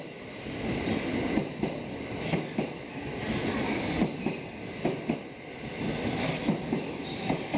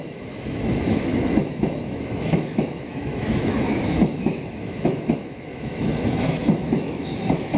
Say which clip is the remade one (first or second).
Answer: second